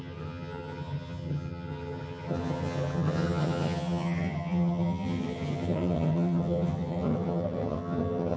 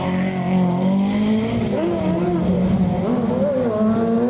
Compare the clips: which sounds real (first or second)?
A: second